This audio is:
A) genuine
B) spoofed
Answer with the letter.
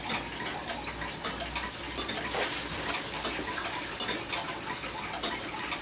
A